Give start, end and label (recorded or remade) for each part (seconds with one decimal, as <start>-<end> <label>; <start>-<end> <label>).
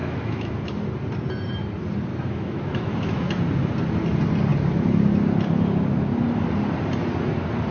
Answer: 0.0-0.5 remade; 0.5-2.1 recorded; 2.1-3.4 remade; 3.4-7.7 recorded